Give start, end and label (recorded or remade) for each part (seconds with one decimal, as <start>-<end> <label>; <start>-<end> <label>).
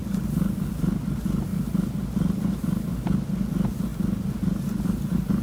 0.0-5.4 recorded